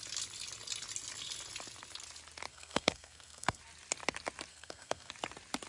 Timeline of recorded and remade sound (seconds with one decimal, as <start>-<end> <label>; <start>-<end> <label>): 0.0-2.5 recorded; 2.5-3.6 remade; 3.6-4.5 recorded; 4.5-5.1 remade; 5.1-5.7 recorded